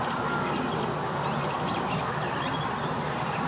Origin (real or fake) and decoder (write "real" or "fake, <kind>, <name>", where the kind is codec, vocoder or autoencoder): real